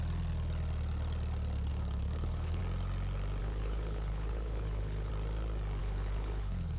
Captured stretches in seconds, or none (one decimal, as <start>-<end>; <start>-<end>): 0.0-1.7; 2.6-3.4; 5.1-5.8